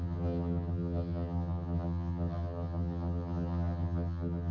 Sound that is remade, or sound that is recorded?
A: remade